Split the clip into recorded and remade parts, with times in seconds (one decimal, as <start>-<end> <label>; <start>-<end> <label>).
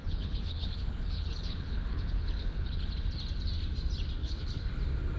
0.0-2.9 remade; 2.9-4.2 recorded; 4.2-4.7 remade; 4.7-5.2 recorded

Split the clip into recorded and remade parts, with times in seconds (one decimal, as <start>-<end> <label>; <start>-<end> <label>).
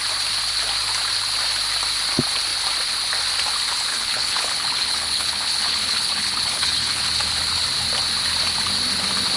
0.0-3.9 recorded; 3.9-7.0 remade; 7.0-9.4 recorded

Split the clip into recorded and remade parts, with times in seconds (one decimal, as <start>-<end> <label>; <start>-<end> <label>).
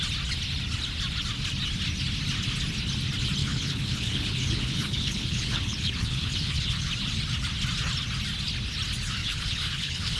0.0-3.4 recorded; 3.4-6.9 remade; 6.9-9.2 recorded; 9.2-10.2 remade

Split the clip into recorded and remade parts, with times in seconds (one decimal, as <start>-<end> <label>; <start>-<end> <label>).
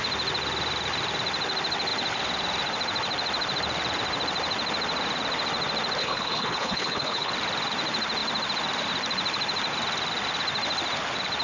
0.0-6.0 recorded; 6.0-7.3 remade; 7.3-11.4 recorded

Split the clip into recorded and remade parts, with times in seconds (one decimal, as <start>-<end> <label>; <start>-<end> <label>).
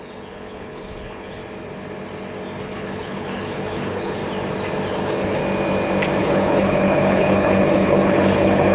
0.0-1.4 remade; 1.4-2.6 recorded; 2.6-4.2 remade; 4.2-4.9 recorded; 4.9-5.4 remade; 5.4-6.2 recorded; 6.2-8.7 remade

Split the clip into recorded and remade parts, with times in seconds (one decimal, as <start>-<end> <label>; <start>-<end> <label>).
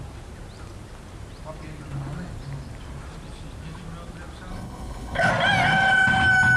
0.0-4.5 recorded; 4.5-5.3 remade; 5.3-6.6 recorded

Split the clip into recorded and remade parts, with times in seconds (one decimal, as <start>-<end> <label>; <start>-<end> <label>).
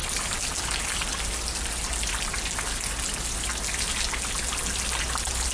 0.0-5.5 recorded